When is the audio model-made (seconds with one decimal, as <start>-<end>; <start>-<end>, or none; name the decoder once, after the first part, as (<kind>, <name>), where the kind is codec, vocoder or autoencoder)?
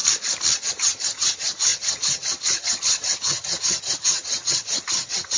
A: 0.7-5.4 (vocoder, HiFi-GAN)